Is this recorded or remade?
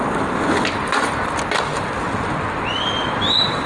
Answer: recorded